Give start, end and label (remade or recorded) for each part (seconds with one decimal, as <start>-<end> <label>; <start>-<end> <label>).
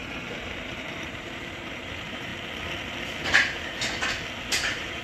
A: 0.0-2.3 remade; 2.3-4.5 recorded; 4.5-5.0 remade